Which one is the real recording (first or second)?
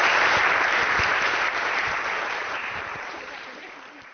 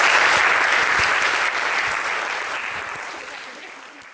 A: second